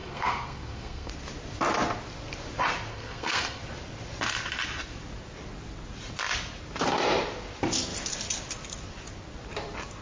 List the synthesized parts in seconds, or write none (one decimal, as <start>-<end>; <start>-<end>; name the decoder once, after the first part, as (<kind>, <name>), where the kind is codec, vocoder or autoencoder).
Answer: 0.0-1.1 (codec, SNAC); 2.9-3.6